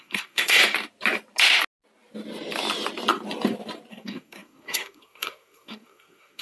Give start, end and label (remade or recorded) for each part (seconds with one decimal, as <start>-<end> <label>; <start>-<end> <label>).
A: 0.0-0.6 remade; 0.6-3.9 recorded; 3.9-6.4 remade